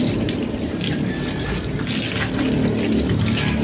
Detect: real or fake real